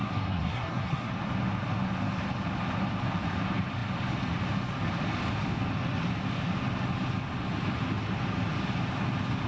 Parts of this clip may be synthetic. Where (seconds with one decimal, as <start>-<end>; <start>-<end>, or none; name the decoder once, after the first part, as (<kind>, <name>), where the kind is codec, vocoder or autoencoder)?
0.0-1.1 (codec, SNAC)